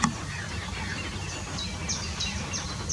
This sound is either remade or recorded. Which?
recorded